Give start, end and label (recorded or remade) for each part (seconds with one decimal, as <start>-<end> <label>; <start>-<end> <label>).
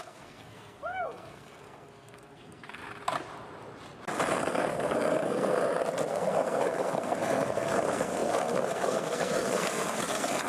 0.0-2.8 remade; 2.8-4.3 recorded; 4.3-5.6 remade; 5.6-6.1 recorded; 6.1-10.5 remade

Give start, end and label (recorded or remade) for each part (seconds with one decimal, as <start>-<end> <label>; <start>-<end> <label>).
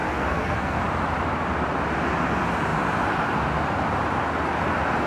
0.0-0.8 remade; 0.8-5.1 recorded